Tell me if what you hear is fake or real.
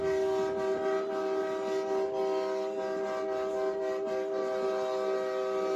real